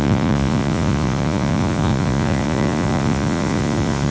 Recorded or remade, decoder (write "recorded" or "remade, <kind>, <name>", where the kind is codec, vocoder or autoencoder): remade, vocoder, Vocos